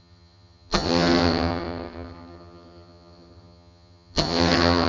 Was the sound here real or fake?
fake